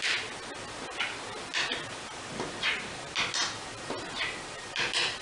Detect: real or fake real